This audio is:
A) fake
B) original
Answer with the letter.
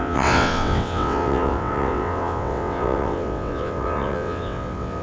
A